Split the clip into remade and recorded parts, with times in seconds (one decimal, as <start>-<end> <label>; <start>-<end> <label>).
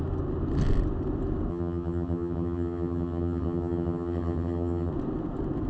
0.0-1.5 recorded; 1.5-4.9 remade; 4.9-5.7 recorded